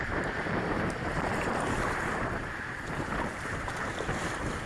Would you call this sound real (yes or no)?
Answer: no